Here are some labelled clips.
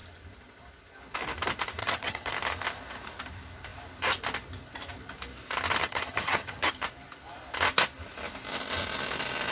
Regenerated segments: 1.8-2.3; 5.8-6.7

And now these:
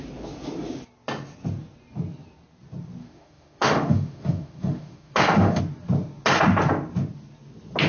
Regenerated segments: 3.0-5.6